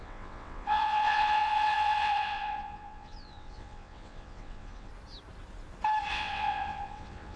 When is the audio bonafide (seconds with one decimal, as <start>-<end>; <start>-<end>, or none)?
4.9-6.1